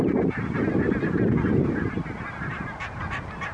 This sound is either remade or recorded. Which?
recorded